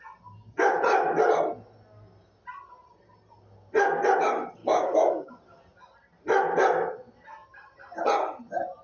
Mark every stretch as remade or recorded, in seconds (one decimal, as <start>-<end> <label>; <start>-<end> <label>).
0.0-4.6 recorded; 4.6-5.3 remade; 5.3-8.8 recorded